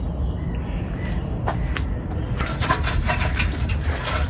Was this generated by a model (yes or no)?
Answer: no